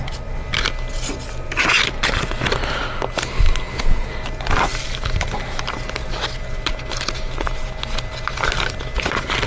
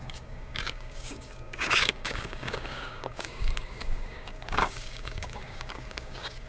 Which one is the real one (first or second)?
first